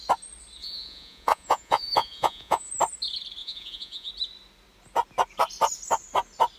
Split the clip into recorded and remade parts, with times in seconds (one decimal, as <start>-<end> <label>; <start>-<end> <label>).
0.0-0.6 recorded; 0.6-2.7 remade; 2.7-3.4 recorded; 3.4-4.1 remade; 4.1-6.6 recorded